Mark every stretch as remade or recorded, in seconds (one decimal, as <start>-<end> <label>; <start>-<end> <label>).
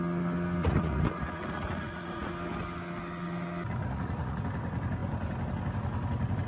0.0-0.6 recorded; 0.6-2.3 remade; 2.3-3.8 recorded; 3.8-4.4 remade; 4.4-6.5 recorded